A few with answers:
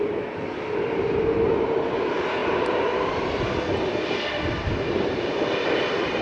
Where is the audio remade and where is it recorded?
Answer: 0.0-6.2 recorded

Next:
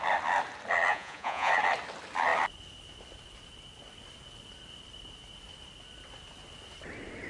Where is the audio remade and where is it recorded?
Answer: 0.0-0.9 recorded; 0.9-1.5 remade; 1.5-7.3 recorded